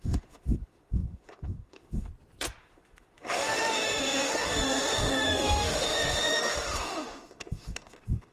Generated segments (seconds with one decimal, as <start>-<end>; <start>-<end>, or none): 0.0-2.1; 2.6-8.3